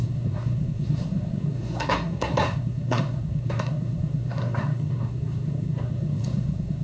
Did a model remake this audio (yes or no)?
yes